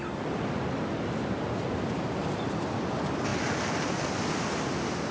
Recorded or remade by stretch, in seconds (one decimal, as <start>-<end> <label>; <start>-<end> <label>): 0.0-5.1 recorded